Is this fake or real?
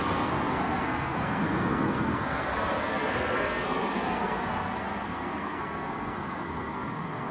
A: fake